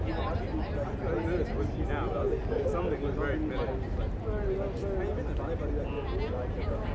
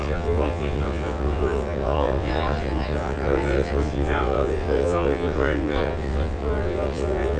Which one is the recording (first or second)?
first